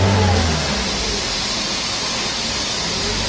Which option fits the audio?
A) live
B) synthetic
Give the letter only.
A